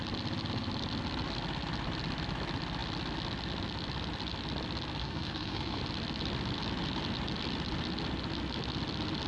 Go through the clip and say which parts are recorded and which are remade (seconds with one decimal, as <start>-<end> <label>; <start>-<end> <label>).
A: 0.0-5.0 recorded; 5.0-5.8 remade; 5.8-9.3 recorded